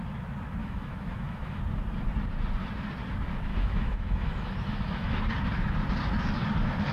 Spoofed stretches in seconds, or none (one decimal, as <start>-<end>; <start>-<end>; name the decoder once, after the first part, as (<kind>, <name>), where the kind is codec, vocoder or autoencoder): 0.6-1.6 (autoencoder, DAC-VAE); 3.5-5.2